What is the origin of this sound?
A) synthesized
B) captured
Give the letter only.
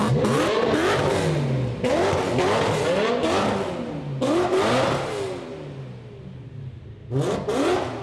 B